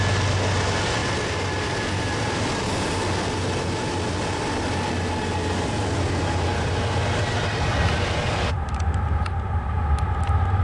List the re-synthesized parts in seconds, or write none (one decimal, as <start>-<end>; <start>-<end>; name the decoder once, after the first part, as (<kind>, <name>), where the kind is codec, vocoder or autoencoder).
none